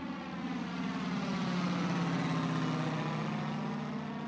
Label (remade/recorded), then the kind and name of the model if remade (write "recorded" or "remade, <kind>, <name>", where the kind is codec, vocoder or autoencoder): recorded